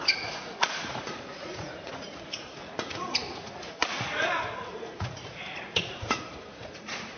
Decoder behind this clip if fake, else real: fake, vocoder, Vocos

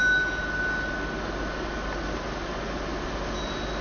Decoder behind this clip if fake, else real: real